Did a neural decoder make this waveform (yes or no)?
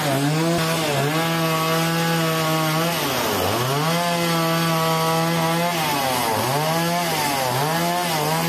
no